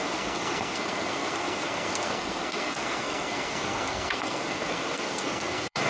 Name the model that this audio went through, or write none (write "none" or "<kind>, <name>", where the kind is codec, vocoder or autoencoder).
codec, SNAC